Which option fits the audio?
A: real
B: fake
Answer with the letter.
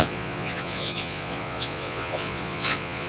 B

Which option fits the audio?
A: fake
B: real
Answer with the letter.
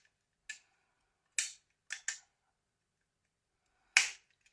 B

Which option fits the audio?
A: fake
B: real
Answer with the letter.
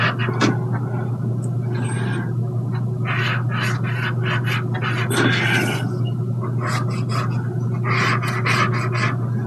B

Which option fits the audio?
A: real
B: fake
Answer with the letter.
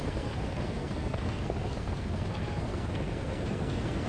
B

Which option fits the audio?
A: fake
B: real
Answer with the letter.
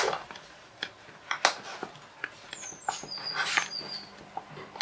B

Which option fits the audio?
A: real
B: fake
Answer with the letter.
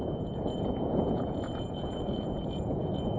B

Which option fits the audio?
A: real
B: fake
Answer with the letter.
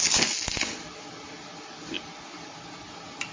A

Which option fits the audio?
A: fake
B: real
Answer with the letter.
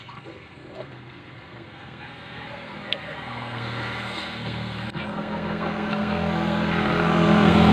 A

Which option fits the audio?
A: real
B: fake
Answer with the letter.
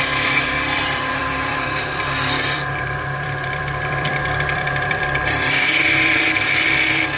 B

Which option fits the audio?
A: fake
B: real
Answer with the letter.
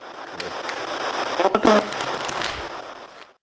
B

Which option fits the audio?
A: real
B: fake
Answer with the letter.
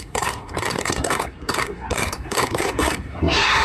B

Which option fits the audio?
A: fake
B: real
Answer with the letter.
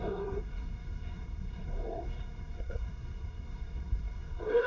A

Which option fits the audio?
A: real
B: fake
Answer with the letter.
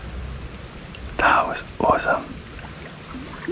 A